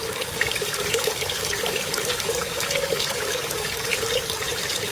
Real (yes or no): no